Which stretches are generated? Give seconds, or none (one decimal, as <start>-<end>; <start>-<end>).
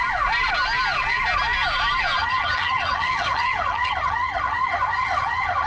2.2-5.7